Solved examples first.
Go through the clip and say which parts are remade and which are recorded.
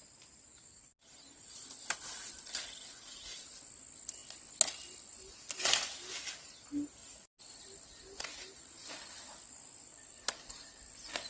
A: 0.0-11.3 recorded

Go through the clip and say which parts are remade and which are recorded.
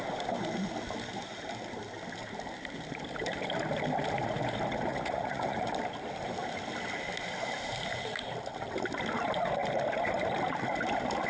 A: 0.0-4.9 recorded; 4.9-5.7 remade; 5.7-11.3 recorded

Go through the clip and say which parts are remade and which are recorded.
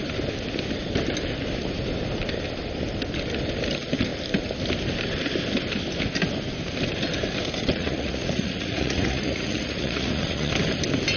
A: 0.0-7.7 recorded; 7.7-10.5 remade; 10.5-11.2 recorded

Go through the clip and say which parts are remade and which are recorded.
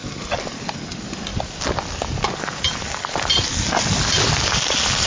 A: 0.0-1.3 recorded; 1.3-2.2 remade; 2.2-5.1 recorded